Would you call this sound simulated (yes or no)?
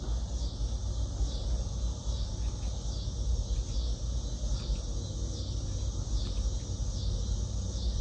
no